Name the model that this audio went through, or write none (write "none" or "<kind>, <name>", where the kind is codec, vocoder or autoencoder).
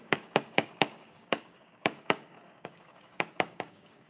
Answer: codec, DAC